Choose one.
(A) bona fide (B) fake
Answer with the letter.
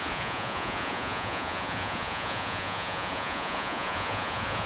B